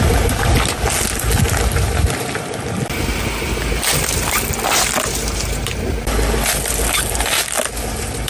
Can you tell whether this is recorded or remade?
recorded